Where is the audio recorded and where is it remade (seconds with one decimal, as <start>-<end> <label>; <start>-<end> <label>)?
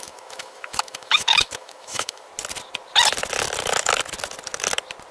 0.0-2.3 remade; 2.3-5.1 recorded